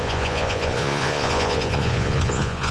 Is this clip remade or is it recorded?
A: remade